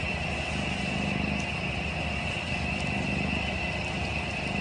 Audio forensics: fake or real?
real